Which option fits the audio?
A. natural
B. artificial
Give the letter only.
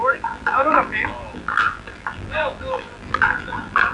B